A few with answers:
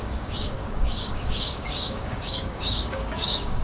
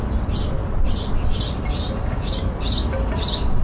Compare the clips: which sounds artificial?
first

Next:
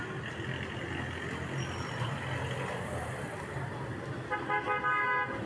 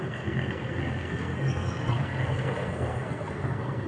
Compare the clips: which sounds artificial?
second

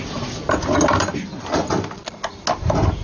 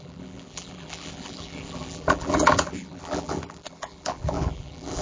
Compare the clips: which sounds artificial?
second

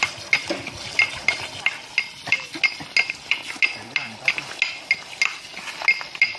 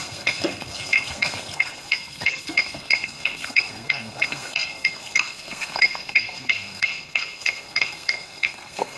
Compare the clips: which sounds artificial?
second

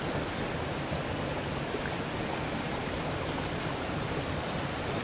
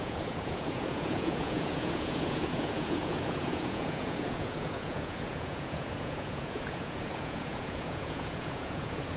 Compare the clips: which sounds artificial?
second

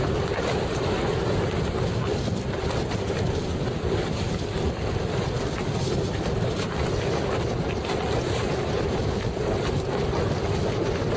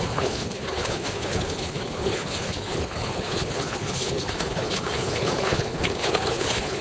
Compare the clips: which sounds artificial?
second